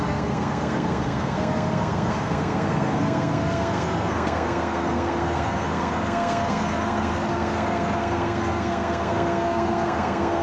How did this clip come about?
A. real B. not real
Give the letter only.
B